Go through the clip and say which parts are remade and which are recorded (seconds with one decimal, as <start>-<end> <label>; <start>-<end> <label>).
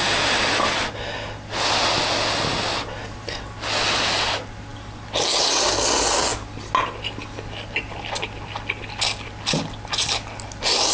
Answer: 0.0-10.9 recorded